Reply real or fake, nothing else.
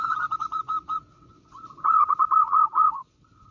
fake